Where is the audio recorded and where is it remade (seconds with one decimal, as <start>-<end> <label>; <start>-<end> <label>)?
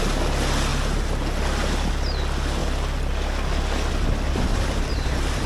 0.0-0.7 recorded; 0.7-1.9 remade; 1.9-4.5 recorded; 4.5-5.5 remade